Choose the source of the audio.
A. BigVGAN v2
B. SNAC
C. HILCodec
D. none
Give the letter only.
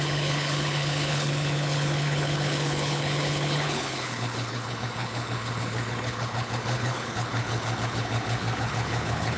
C